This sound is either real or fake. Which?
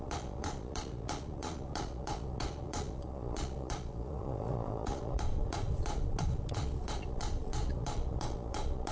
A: fake